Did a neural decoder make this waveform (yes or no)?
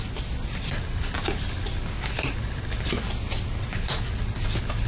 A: no